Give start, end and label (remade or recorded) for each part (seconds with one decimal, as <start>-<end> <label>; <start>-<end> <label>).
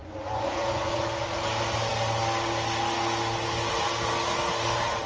0.0-1.0 remade; 1.0-5.1 recorded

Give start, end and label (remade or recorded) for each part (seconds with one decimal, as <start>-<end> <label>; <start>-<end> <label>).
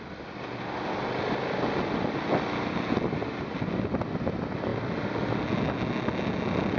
0.0-6.8 recorded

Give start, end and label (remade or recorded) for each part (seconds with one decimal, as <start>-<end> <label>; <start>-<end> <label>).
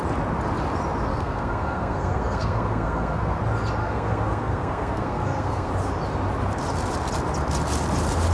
0.0-1.1 recorded; 1.1-3.4 remade; 3.4-3.8 recorded; 3.8-5.7 remade; 5.7-8.3 recorded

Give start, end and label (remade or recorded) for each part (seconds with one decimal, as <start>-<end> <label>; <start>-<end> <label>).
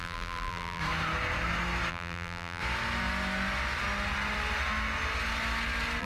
0.0-0.8 remade; 0.8-1.9 recorded; 1.9-2.6 remade; 2.6-6.0 recorded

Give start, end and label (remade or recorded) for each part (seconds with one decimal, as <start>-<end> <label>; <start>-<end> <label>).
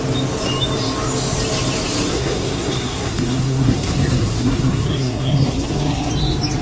0.0-2.1 recorded; 2.1-6.1 remade; 6.1-6.6 recorded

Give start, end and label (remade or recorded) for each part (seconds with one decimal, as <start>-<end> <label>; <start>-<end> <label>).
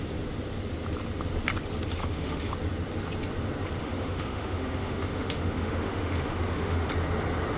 0.0-2.0 recorded; 2.0-2.5 remade; 2.5-3.8 recorded; 3.8-6.9 remade; 6.9-7.6 recorded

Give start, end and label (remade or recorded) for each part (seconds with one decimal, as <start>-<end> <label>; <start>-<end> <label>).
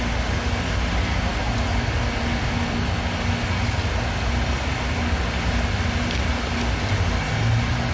0.0-7.9 recorded